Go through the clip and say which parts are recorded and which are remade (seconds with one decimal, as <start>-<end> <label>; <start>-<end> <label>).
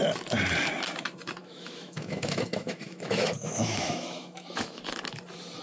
0.0-1.4 recorded; 1.4-4.8 remade; 4.8-5.6 recorded